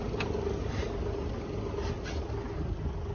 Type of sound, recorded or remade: recorded